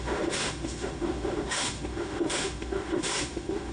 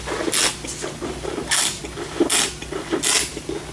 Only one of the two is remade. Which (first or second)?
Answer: first